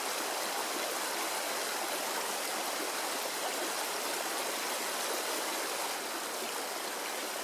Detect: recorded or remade recorded